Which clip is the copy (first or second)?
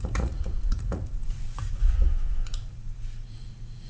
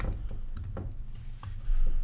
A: first